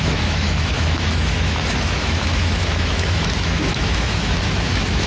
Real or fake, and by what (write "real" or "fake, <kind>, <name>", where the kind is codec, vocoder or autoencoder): fake, autoencoder, DAC-VAE